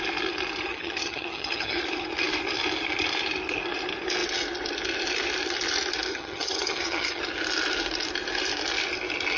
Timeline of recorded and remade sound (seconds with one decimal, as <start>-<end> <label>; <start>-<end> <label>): 0.0-0.7 recorded; 0.7-1.8 remade; 1.8-6.1 recorded; 6.1-7.2 remade; 7.2-9.4 recorded